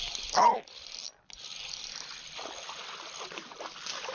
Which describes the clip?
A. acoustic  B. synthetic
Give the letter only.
A